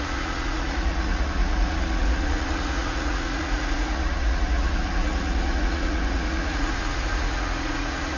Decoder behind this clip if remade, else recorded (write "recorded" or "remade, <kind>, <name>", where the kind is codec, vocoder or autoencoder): remade, vocoder, Vocos